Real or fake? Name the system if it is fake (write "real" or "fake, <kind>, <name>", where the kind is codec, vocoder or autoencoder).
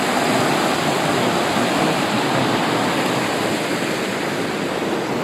real